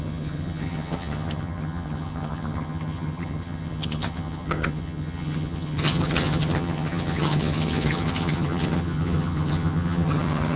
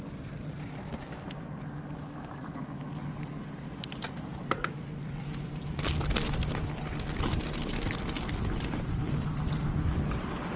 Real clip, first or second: second